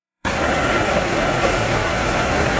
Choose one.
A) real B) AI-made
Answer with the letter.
B